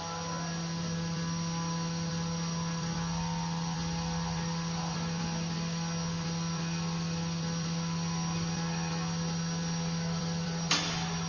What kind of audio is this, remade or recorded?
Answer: recorded